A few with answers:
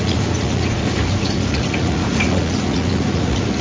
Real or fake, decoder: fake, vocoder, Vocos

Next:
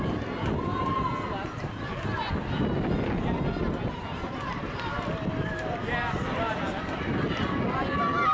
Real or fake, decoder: real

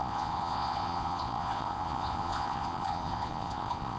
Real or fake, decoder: fake, vocoder, Vocos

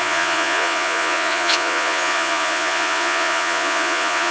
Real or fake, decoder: fake, vocoder, Vocos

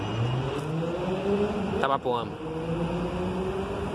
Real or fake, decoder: real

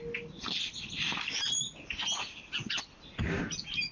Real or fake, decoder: real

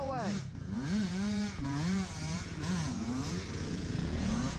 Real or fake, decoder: fake, vocoder, Vocos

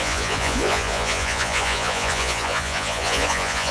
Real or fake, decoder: fake, vocoder, Vocos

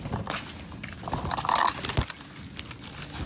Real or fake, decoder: real